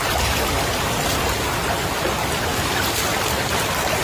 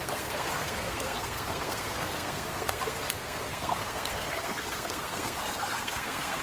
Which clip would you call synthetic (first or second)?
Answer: second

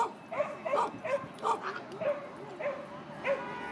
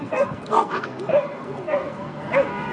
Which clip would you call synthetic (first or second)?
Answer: second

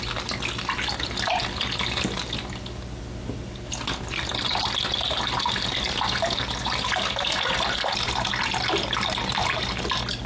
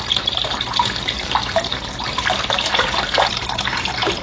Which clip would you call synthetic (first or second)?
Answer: second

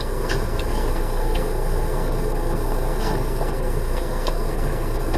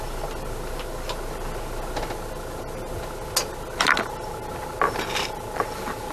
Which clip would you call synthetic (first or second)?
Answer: first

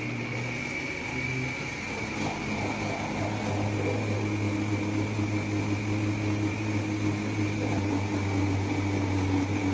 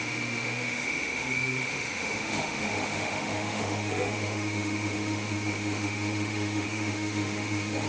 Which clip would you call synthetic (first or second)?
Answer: second